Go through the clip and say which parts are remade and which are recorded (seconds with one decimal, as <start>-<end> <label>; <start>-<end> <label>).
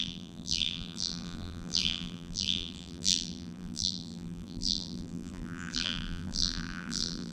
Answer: 0.0-7.3 remade